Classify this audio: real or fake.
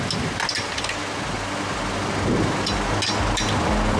real